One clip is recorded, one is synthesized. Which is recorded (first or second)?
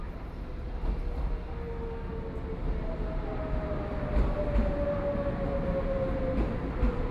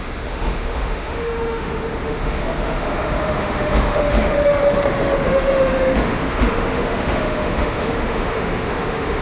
first